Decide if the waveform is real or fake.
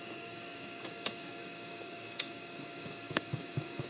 fake